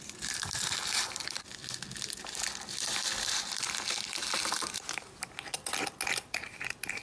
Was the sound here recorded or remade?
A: recorded